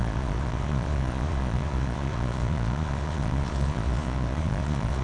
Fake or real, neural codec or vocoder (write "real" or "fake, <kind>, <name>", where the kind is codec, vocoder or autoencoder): fake, vocoder, Vocos